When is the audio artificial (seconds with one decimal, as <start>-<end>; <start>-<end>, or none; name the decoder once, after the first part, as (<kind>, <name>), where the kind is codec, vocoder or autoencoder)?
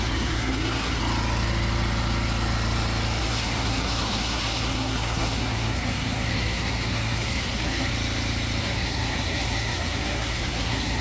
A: 0.0-1.0 (codec, SNAC); 3.2-7.9; 8.6-11.0